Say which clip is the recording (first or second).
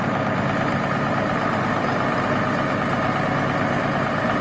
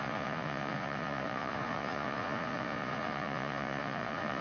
first